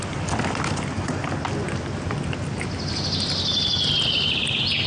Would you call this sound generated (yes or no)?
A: no